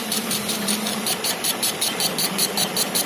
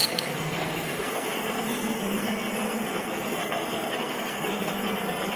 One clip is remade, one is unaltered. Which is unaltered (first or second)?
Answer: first